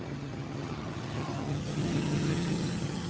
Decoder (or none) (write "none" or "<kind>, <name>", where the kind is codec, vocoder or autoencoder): vocoder, HiFi-GAN